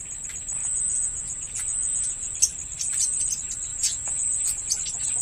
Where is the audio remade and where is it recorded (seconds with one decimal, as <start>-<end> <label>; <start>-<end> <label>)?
0.0-0.6 recorded; 0.6-2.3 remade; 2.3-3.7 recorded; 3.7-4.7 remade; 4.7-5.2 recorded